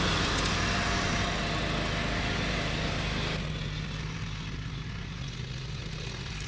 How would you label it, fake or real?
real